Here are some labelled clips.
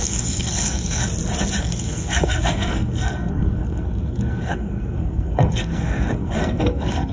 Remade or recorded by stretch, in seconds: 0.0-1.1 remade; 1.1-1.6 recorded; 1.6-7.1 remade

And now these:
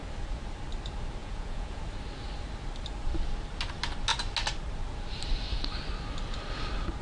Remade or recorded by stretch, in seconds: 0.0-1.2 recorded; 1.2-1.8 remade; 1.8-7.0 recorded

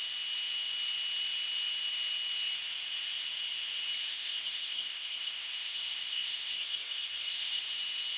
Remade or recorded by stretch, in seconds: 0.0-4.1 recorded; 4.1-7.6 remade; 7.6-8.2 recorded

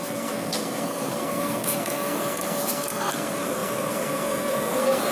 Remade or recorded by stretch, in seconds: 0.0-5.1 remade